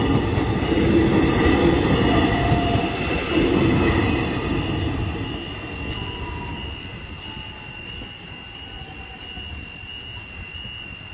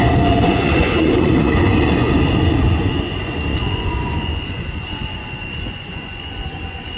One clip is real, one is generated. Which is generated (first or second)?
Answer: second